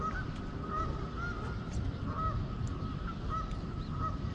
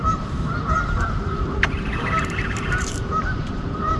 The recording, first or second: first